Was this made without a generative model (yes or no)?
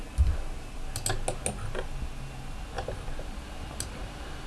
yes